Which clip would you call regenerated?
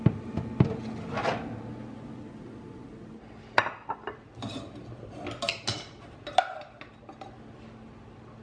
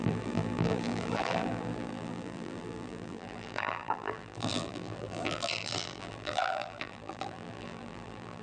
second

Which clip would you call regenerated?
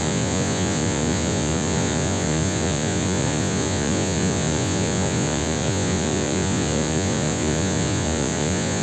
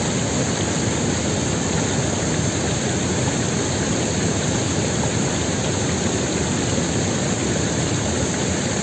first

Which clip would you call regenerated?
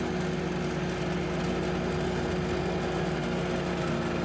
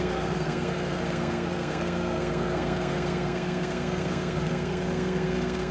second